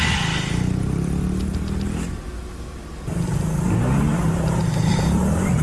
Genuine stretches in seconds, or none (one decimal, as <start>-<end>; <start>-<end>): 0.0-5.6